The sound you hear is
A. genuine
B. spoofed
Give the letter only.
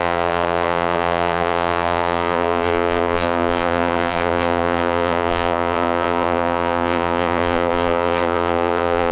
B